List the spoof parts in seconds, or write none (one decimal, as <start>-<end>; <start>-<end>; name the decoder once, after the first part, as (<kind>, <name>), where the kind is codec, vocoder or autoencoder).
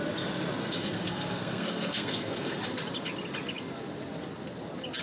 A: 0.6-2.6 (codec, SNAC)